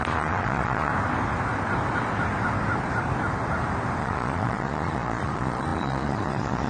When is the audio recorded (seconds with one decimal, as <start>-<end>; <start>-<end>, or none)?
0.9-4.0